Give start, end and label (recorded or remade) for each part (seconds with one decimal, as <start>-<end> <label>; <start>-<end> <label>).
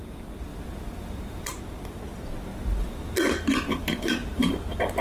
0.0-0.5 recorded; 0.5-1.6 remade; 1.6-2.5 recorded; 2.5-3.0 remade; 3.0-3.5 recorded; 3.5-4.5 remade; 4.5-5.0 recorded